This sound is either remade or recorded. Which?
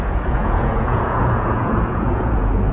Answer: remade